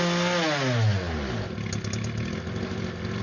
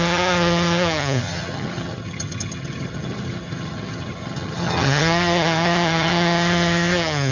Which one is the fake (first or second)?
second